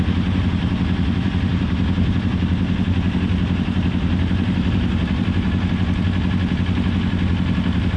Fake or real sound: real